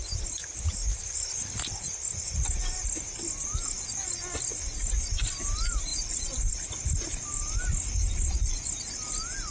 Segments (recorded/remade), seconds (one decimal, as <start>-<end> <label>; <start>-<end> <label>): 0.0-0.5 recorded; 0.5-1.0 remade; 1.0-5.9 recorded; 5.9-6.5 remade; 6.5-9.5 recorded